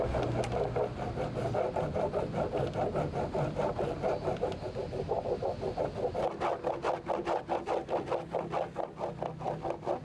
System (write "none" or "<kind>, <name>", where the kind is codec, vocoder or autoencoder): none